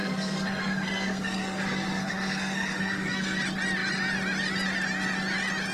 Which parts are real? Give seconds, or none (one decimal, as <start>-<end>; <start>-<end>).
3.4-5.7